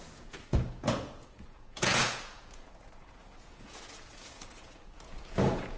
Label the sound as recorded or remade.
remade